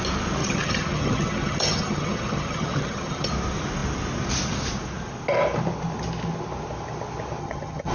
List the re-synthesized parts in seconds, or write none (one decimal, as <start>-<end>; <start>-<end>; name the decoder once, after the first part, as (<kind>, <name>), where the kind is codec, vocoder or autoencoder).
0.4-3.3 (vocoder, HiFi-GAN); 7.4-7.9